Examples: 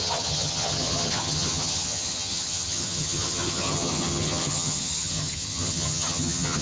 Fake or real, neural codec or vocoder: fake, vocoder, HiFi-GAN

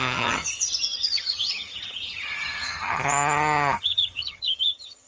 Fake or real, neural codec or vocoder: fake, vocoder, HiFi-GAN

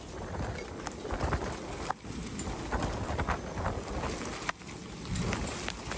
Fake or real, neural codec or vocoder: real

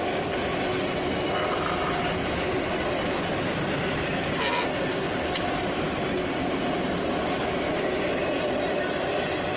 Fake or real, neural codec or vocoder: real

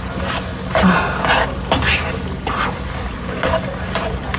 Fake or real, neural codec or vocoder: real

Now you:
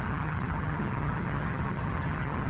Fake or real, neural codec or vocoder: fake, vocoder, HiFi-GAN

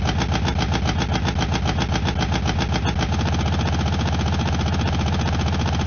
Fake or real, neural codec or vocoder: real